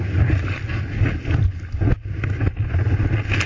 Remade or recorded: recorded